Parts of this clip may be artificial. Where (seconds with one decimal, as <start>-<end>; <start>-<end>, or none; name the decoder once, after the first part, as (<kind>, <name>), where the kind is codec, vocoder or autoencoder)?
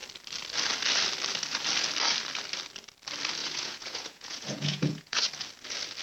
3.4-5.2 (vocoder, Vocos)